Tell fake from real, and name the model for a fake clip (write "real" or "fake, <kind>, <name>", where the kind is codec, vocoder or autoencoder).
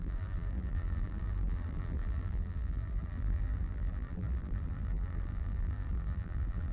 fake, vocoder, BigVGAN v2